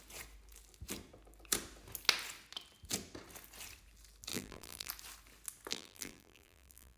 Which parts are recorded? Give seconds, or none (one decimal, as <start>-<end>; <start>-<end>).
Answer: 0.0-4.3; 4.9-5.7